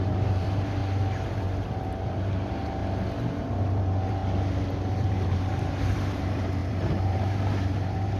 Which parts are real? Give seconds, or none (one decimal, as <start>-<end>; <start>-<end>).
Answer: 0.8-1.4; 2.8-3.4; 4.2-5.0